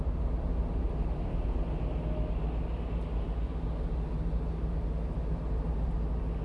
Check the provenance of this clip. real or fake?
real